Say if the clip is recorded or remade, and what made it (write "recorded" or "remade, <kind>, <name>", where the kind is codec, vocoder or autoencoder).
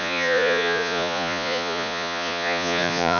remade, vocoder, Vocos